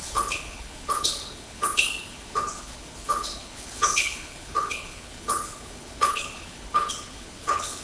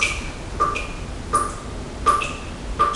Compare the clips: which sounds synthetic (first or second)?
first